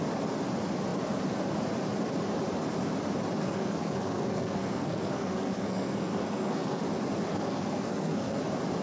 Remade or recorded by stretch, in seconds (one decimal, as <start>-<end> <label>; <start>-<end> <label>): 0.0-3.4 recorded; 3.4-6.8 remade; 6.8-7.3 recorded; 7.3-8.4 remade; 8.4-8.8 recorded